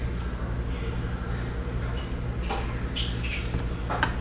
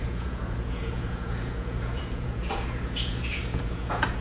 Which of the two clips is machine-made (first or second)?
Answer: second